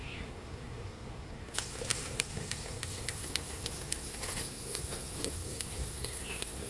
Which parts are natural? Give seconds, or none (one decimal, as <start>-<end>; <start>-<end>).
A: none